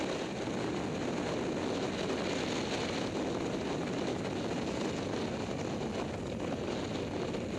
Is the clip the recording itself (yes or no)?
yes